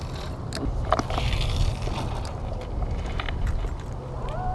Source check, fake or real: real